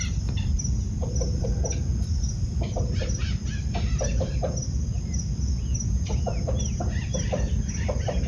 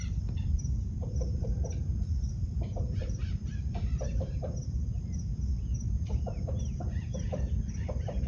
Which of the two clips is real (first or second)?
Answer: first